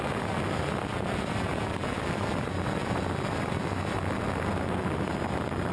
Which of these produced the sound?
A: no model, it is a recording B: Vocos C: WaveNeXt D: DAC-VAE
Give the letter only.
A